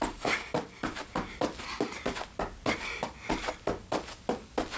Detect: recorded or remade recorded